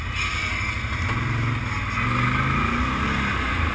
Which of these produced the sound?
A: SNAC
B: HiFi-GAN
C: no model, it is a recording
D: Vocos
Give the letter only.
C